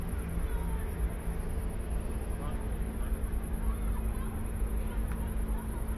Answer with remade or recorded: recorded